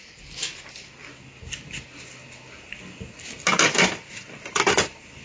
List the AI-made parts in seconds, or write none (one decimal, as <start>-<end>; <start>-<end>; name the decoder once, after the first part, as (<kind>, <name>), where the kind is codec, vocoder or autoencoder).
none